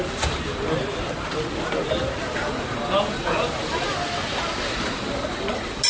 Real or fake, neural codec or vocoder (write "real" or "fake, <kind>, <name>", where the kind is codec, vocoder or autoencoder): real